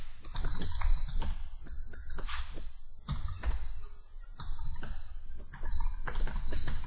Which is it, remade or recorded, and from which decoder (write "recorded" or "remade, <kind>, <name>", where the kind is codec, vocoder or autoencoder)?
recorded